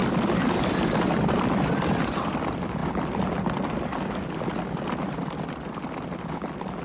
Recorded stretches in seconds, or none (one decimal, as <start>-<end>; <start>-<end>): 2.8-4.4